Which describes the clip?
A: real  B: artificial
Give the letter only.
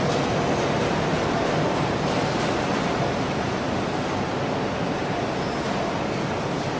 A